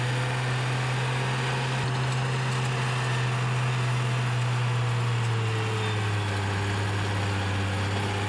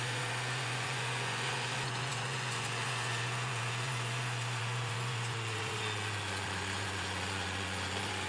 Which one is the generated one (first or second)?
second